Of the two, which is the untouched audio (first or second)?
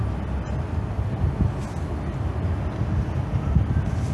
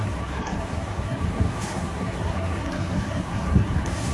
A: first